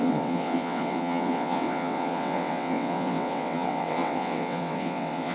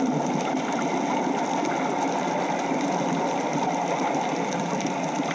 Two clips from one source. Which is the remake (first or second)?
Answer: first